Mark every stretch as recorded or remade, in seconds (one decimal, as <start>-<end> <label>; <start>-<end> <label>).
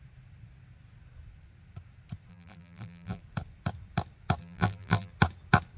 0.0-2.3 recorded; 2.3-3.2 remade; 3.2-4.4 recorded; 4.4-5.1 remade; 5.1-5.8 recorded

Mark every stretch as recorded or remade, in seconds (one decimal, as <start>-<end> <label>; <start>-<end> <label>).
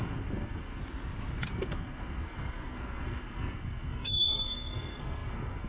0.0-0.8 remade; 0.8-1.5 recorded; 1.5-5.7 remade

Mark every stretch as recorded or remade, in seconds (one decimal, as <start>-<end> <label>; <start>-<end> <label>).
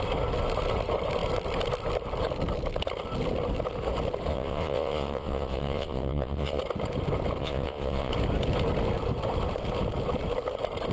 0.0-4.3 recorded; 4.3-6.6 remade; 6.6-7.4 recorded; 7.4-8.1 remade; 8.1-10.9 recorded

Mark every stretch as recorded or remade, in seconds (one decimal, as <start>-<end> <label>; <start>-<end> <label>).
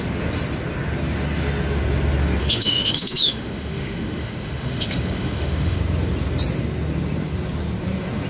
0.0-2.4 recorded; 2.4-5.8 remade; 5.8-8.3 recorded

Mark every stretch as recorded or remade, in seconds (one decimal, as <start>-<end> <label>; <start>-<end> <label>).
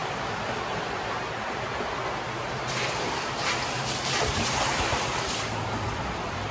0.0-0.9 remade; 0.9-2.4 recorded; 2.4-6.5 remade